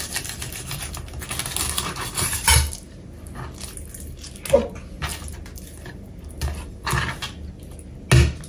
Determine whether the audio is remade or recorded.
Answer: recorded